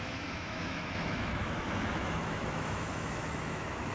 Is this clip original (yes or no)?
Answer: no